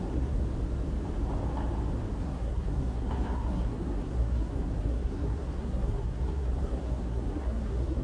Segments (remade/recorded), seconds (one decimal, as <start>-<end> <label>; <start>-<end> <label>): 0.0-0.4 remade; 0.4-2.2 recorded; 2.2-8.0 remade